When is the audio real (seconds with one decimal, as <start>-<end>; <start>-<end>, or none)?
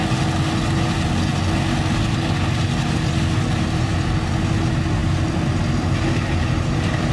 0.0-7.1